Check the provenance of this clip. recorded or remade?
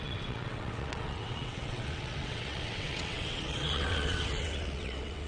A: remade